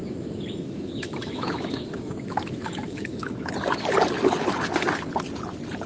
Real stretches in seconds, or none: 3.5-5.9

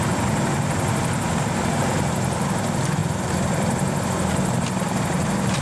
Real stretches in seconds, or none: 0.0-5.6

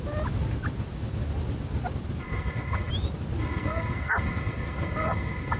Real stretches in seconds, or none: 0.0-2.2; 2.9-3.4

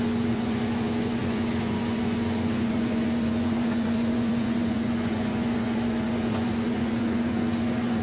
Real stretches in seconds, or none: none

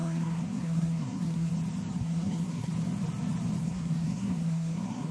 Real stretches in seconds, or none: 1.5-1.9; 2.7-3.6

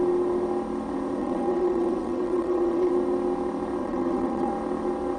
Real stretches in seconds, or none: 0.0-1.2; 2.9-3.8; 4.5-5.2